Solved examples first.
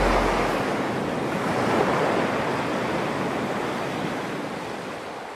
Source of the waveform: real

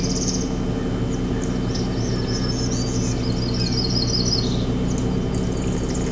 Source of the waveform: real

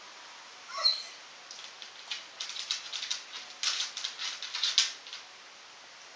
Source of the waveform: real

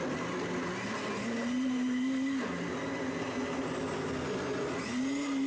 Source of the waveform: real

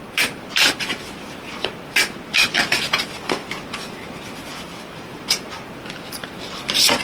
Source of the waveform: real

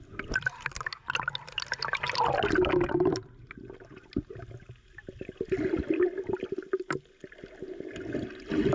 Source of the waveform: real